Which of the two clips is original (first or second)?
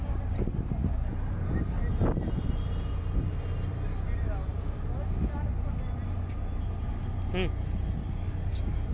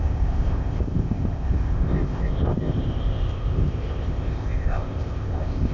first